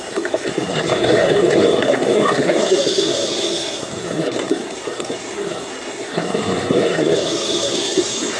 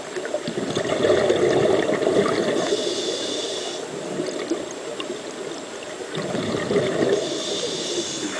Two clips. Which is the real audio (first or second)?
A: second